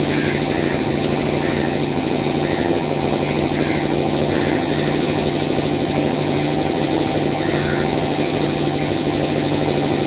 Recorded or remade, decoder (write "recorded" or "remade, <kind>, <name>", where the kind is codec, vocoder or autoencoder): remade, vocoder, HiFi-GAN